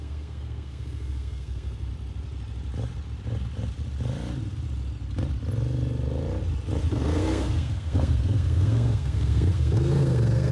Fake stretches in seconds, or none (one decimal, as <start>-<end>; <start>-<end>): 0.0-1.9; 6.9-10.5